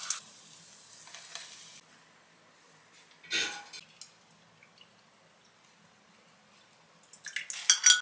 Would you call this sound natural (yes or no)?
yes